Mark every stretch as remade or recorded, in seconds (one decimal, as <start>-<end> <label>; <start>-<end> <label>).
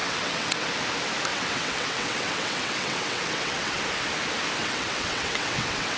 0.0-0.7 remade; 0.7-1.3 recorded; 1.3-3.8 remade; 3.8-4.6 recorded; 4.6-6.0 remade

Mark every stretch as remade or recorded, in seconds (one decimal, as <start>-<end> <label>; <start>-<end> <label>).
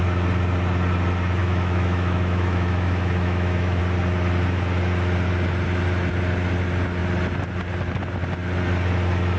0.0-1.4 recorded; 1.4-3.8 remade; 3.8-9.4 recorded